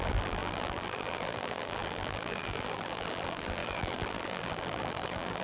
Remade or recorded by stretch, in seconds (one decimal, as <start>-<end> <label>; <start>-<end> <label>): 0.0-5.4 remade